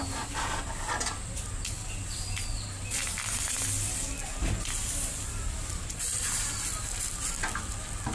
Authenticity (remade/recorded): recorded